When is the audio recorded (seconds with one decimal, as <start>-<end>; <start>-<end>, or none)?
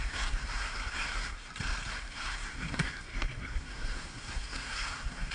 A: 1.5-1.9